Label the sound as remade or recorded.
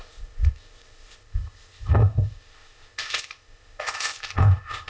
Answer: remade